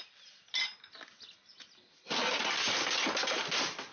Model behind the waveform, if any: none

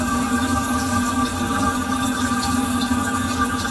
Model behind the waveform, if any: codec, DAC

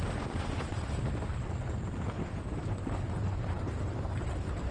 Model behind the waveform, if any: vocoder, BigVGAN v2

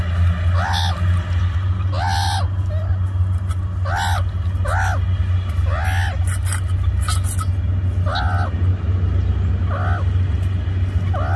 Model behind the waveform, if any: none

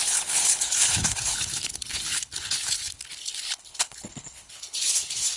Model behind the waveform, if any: codec, HILCodec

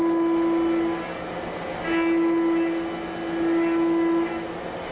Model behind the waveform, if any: none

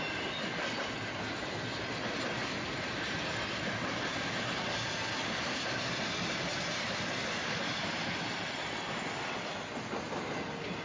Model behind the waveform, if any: none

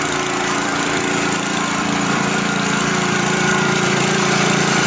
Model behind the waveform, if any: vocoder, BigVGAN v2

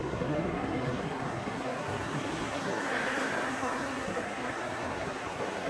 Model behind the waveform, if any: codec, SNAC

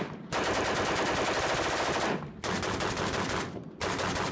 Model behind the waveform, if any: none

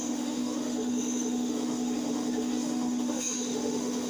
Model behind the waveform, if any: autoencoder, DAC-VAE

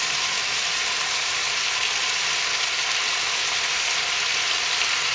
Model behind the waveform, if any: none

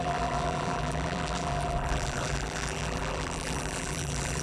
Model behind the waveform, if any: vocoder, BigVGAN v2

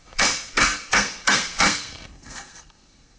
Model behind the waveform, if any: codec, SNAC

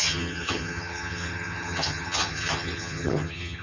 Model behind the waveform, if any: vocoder, HiFi-GAN